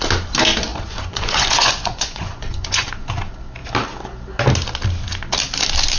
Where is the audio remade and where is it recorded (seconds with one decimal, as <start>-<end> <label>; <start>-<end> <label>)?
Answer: 0.0-0.7 recorded; 0.7-2.9 remade; 2.9-6.0 recorded